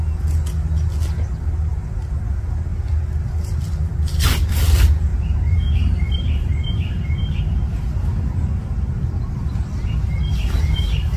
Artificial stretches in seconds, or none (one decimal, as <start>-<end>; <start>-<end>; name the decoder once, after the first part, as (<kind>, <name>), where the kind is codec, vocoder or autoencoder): 5.1-7.4 (vocoder, BigVGAN v2)

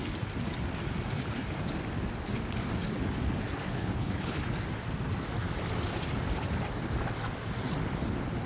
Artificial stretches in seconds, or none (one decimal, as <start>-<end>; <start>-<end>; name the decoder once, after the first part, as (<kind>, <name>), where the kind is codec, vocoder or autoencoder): 3.8-4.4 (codec, HILCodec)